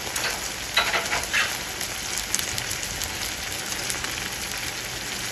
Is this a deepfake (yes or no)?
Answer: no